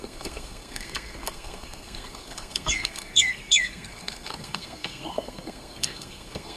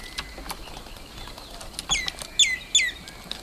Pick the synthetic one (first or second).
first